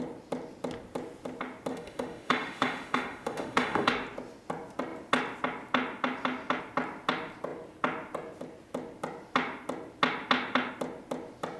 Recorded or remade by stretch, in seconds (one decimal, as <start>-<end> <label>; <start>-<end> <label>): 0.0-1.7 recorded; 1.7-3.9 remade; 3.9-11.6 recorded